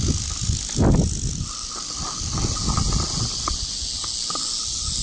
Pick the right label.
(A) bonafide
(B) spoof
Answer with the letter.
B